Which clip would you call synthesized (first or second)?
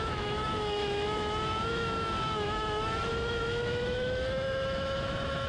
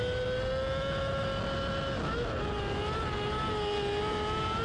first